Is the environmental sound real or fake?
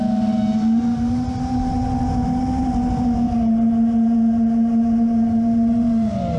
real